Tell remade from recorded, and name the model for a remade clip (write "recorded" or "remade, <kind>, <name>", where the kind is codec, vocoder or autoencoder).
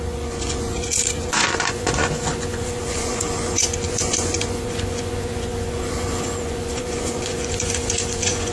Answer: remade, vocoder, Vocos